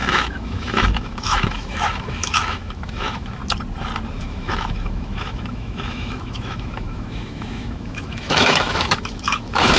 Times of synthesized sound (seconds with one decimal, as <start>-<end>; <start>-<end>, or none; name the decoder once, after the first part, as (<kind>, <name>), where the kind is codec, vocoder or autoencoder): 0.0-3.4 (autoencoder, DAC-VAE); 4.2-9.8

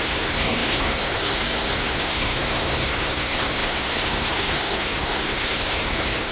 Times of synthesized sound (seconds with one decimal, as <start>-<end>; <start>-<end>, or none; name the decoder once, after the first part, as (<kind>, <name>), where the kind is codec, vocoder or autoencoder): 0.0-6.3 (codec, SNAC)